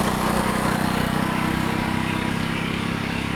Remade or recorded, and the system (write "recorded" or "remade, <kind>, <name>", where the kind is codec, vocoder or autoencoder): remade, codec, DAC